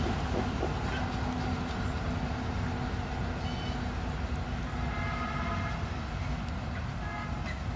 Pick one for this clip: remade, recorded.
recorded